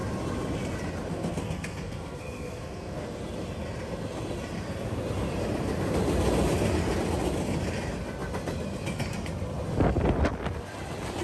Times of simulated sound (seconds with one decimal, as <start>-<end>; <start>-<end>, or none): 1.1-3.2